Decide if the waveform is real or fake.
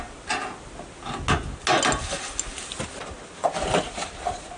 real